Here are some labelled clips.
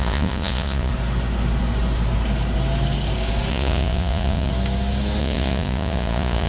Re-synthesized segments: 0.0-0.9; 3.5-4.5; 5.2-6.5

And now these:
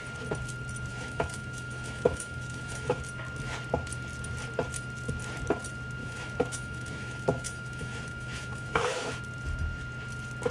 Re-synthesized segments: 0.9-3.0; 6.0-9.2

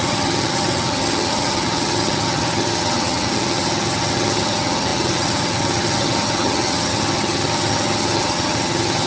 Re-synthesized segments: 0.0-9.1

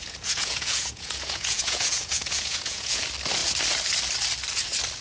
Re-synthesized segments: 0.0-3.0

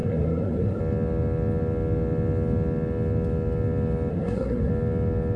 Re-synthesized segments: 0.0-0.8; 4.1-4.7

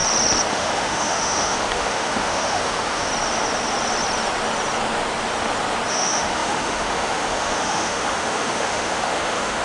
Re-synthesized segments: 0.5-3.1; 5.9-9.6

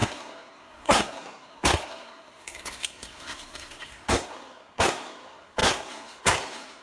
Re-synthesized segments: 0.0-6.8

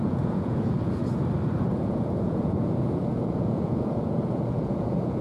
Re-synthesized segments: 0.0-1.0; 1.6-5.2